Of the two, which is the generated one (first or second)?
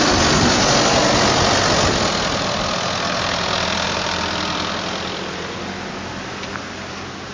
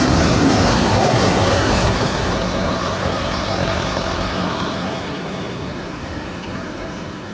second